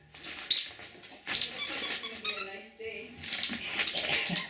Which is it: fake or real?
real